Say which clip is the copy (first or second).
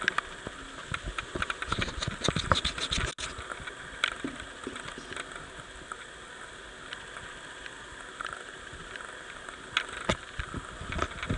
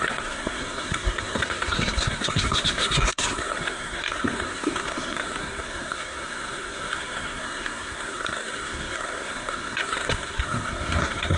second